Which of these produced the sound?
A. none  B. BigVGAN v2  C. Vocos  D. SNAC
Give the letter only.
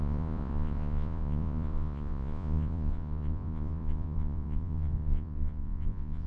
C